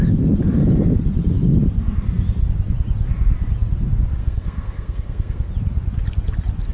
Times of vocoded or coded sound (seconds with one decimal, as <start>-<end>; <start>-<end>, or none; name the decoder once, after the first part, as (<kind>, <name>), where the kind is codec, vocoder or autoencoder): 4.2-5.5 (codec, SNAC)